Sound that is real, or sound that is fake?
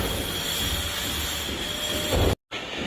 real